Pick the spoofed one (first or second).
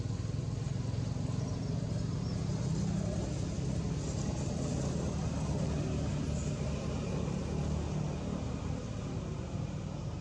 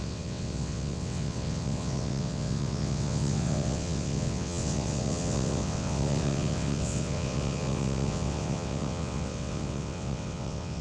second